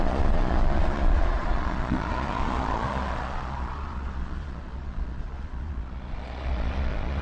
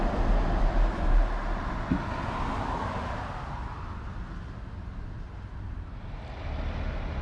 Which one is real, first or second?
second